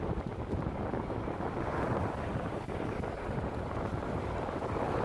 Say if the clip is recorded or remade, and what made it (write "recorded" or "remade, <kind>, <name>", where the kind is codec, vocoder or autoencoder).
recorded